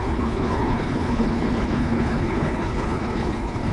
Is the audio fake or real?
fake